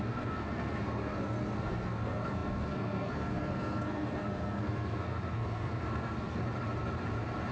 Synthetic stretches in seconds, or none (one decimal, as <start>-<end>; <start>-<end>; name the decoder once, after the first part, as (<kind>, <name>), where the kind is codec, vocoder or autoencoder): 0.0-6.4 (codec, SNAC)

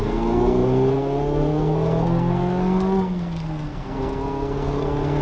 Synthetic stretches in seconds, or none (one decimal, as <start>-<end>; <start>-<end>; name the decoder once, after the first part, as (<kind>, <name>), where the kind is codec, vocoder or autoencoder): 0.0-5.2 (codec, SNAC)

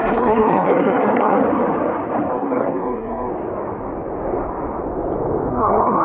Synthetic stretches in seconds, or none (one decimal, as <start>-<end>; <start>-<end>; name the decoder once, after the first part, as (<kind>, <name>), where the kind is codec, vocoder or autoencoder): 0.0-1.4 (codec, SNAC); 2.3-3.3; 5.5-6.0

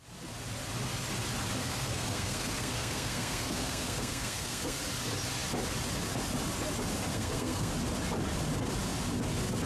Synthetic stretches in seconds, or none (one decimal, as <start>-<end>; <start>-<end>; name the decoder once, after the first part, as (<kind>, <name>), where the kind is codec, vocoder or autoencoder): 1.6-4.8 (codec, SNAC); 7.1-7.7

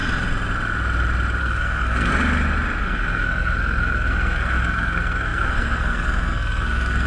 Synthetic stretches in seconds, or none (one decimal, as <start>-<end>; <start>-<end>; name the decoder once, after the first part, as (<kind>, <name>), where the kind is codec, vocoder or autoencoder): 1.4-2.1 (codec, SNAC); 2.8-7.1

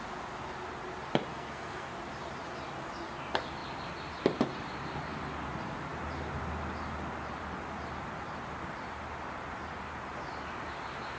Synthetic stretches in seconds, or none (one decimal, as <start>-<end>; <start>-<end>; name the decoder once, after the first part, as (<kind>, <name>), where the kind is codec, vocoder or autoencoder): 1.3-1.9 (codec, SNAC)